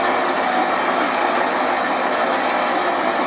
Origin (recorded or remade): recorded